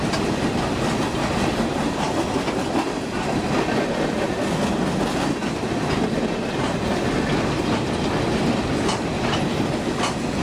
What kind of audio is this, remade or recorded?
recorded